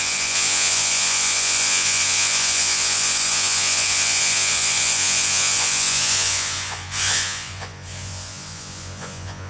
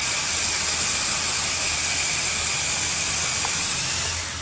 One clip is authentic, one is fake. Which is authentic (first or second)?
second